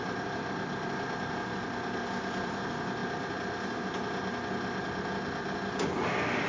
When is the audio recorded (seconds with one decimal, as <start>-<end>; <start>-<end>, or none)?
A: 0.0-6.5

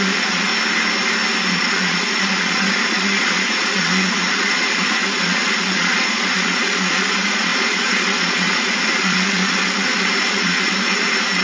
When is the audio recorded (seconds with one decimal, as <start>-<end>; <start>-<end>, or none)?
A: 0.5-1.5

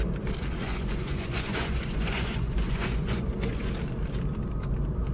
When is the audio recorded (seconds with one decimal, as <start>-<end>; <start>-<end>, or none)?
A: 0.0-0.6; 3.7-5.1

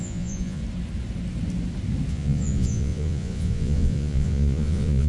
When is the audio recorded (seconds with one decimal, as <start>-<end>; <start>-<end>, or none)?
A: 0.6-2.1

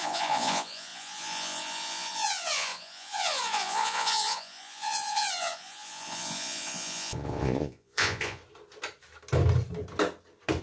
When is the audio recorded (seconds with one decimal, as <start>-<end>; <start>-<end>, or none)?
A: 8.4-10.6

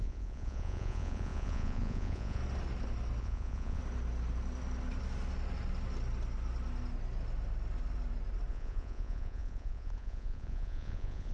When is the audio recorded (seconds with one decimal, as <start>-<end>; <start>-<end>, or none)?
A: 2.4-3.2; 3.8-8.5